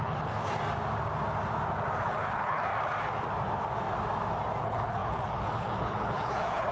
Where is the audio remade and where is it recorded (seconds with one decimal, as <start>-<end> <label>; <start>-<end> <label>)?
0.0-0.4 remade; 0.4-2.0 recorded; 2.0-2.7 remade; 2.7-4.6 recorded; 4.6-6.7 remade

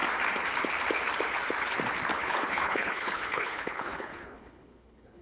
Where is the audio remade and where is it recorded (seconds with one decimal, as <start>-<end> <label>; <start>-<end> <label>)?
0.0-2.1 recorded; 2.1-5.2 remade